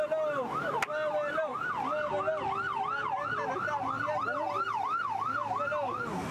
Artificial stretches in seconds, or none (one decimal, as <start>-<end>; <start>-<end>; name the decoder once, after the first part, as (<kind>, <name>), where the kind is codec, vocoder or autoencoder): none